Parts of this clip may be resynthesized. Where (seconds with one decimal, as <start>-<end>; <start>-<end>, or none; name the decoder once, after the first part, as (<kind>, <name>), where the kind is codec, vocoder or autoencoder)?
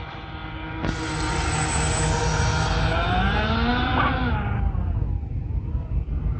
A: none